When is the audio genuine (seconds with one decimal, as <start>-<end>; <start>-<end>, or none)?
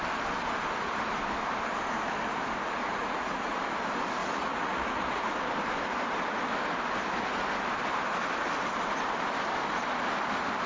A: 0.0-3.0; 3.6-4.2; 5.2-10.7